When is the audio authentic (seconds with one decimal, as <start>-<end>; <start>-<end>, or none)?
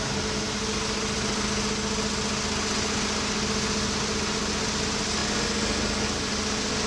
0.0-6.9